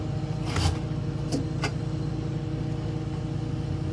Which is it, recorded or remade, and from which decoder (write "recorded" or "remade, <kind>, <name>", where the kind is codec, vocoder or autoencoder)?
recorded